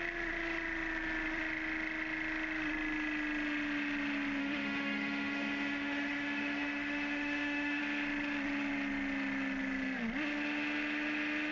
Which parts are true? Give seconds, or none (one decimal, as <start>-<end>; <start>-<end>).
0.0-4.4; 7.8-11.5